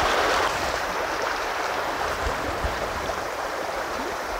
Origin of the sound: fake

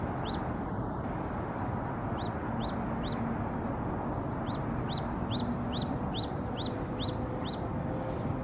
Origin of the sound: real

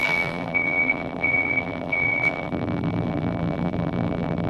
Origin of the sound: fake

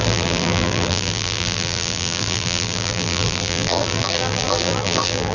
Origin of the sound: fake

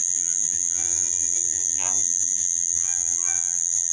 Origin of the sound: fake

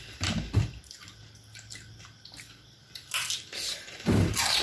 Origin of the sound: fake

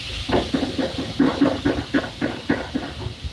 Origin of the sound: real